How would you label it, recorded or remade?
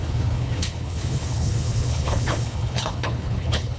remade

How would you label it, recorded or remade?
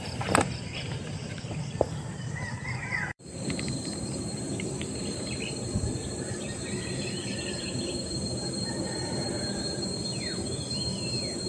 remade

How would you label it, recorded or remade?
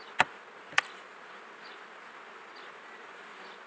recorded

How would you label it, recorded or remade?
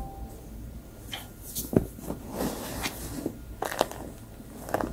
recorded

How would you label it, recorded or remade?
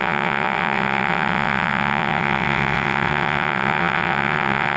remade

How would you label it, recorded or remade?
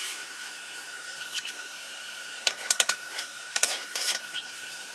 remade